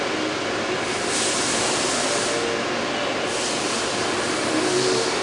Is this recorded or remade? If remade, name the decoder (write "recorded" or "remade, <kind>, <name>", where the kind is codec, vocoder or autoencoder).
recorded